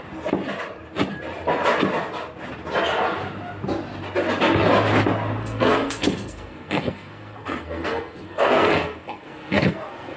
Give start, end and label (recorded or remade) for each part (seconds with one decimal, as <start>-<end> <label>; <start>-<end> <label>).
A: 0.0-5.4 recorded; 5.4-10.2 remade